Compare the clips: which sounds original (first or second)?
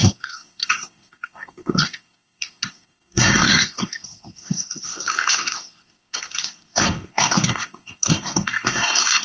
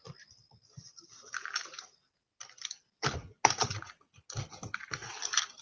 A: second